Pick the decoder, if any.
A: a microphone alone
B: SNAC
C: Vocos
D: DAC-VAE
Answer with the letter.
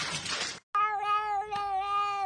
A